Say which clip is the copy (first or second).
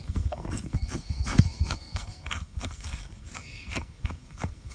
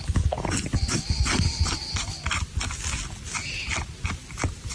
first